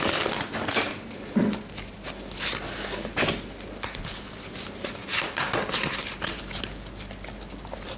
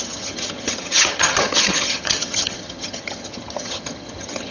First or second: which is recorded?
first